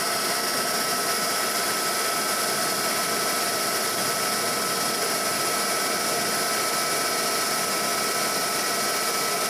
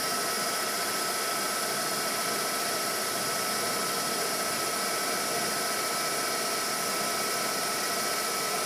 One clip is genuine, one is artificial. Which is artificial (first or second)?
second